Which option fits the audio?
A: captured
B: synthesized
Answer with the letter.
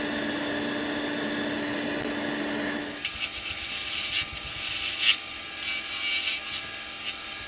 A